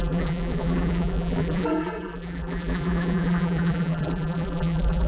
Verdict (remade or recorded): remade